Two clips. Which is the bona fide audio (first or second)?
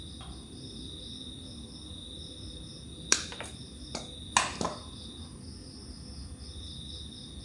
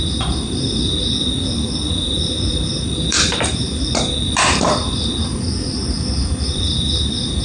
first